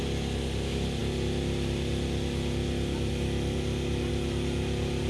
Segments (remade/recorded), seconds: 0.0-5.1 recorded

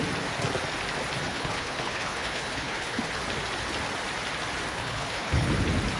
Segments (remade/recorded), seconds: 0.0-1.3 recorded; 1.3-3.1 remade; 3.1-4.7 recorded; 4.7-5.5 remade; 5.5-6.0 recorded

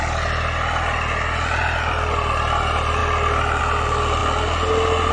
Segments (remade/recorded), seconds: 0.0-5.1 recorded

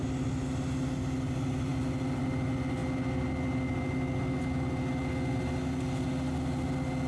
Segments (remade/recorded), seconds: 0.0-7.1 recorded

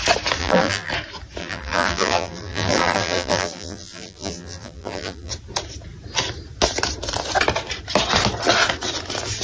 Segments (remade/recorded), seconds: 0.0-0.4 recorded; 0.4-0.9 remade; 0.9-1.4 recorded; 1.4-5.3 remade; 5.3-9.4 recorded

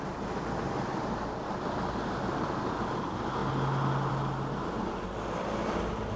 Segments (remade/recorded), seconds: 0.0-6.2 recorded